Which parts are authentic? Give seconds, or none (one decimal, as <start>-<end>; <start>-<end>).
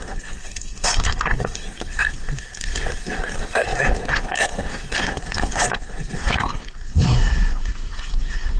none